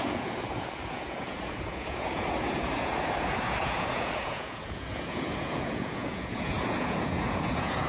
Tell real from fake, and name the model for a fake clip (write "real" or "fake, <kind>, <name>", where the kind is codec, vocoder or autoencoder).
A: fake, vocoder, Vocos